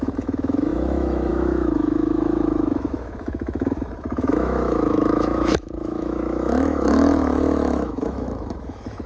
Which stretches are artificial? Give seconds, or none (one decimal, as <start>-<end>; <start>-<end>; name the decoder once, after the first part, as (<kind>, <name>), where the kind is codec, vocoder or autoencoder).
0.0-9.1 (autoencoder, DAC-VAE)